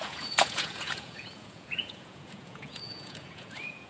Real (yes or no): no